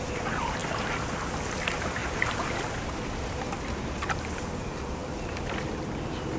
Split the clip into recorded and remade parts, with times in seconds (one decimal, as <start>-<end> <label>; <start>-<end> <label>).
0.0-6.4 recorded